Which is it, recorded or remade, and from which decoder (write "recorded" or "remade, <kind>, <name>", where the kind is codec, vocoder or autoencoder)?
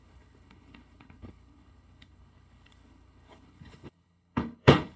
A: remade, codec, HILCodec